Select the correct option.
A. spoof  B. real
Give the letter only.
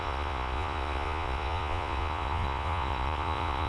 A